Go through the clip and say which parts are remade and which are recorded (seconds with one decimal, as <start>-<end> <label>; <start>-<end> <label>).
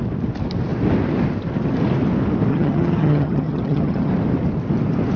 0.0-2.5 recorded; 2.5-4.1 remade; 4.1-5.2 recorded